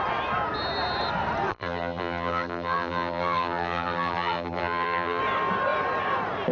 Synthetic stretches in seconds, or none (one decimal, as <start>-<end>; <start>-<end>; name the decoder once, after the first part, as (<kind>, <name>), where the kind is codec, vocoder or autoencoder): 1.5-5.2 (vocoder, BigVGAN v2)